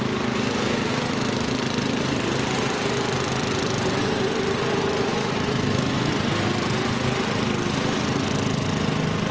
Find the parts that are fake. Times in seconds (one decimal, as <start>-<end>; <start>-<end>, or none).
0.9-1.5; 5.1-6.1